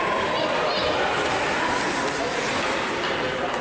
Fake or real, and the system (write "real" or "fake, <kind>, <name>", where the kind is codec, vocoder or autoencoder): real